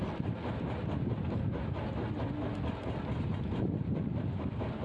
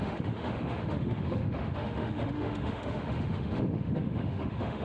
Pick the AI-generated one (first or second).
second